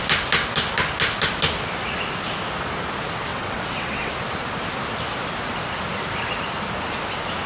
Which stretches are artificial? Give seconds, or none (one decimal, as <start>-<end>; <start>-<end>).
3.3-4.1